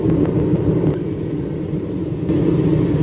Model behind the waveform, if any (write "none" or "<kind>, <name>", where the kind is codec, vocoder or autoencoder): none